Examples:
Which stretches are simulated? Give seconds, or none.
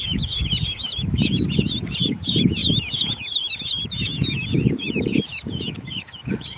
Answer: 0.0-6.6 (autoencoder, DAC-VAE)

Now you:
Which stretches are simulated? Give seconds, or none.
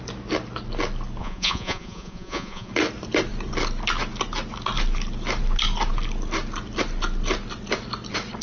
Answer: 1.2-2.7 (vocoder, Vocos)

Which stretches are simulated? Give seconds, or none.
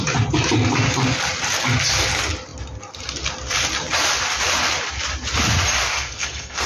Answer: 5.9-6.7 (codec, SNAC)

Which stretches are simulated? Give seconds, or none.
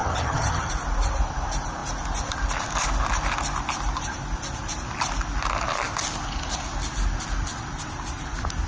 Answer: 0.0-0.7 (vocoder, HiFi-GAN)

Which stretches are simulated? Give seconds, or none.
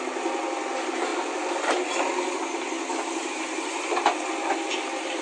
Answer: none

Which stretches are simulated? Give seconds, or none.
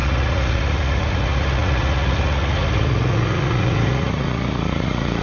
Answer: 0.0-5.2 (vocoder, Vocos)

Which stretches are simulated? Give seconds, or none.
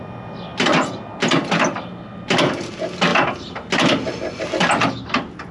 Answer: none